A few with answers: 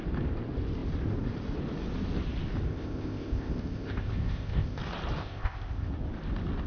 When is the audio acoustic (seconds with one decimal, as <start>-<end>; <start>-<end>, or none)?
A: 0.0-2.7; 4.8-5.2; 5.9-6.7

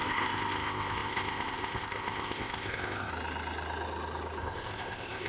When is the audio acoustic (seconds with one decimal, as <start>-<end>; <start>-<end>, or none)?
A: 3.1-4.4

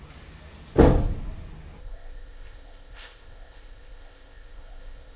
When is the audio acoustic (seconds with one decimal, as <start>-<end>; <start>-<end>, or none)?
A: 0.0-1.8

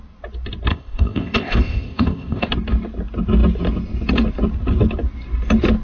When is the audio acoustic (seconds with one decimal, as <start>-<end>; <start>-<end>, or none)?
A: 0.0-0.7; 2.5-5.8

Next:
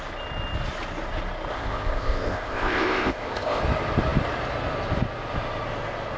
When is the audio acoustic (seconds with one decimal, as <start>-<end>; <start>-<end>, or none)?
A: 0.0-1.5; 3.6-6.2